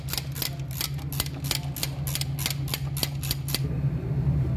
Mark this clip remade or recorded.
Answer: recorded